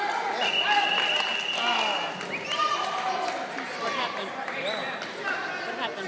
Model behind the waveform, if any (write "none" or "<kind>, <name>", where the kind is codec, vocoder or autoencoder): none